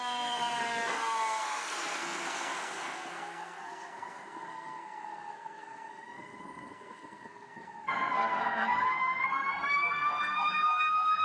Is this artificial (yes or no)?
yes